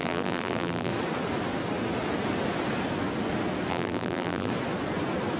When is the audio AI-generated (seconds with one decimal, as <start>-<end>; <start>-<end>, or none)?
0.0-0.9; 3.7-4.5